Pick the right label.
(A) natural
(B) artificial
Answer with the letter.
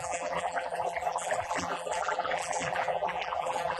B